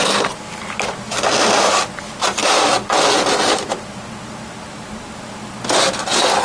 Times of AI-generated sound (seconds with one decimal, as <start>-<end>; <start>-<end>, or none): none